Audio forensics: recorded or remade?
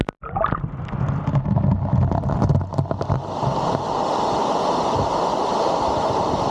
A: recorded